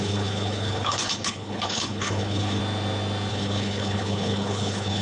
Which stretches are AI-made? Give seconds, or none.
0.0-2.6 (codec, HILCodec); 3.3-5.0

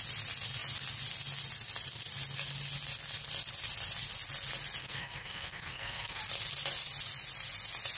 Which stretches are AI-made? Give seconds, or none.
4.8-6.2 (codec, SNAC)

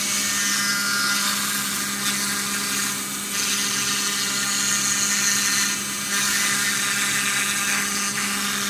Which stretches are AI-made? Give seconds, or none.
6.1-6.7 (codec, DAC)